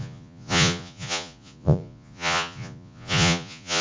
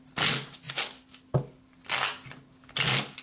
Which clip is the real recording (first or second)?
second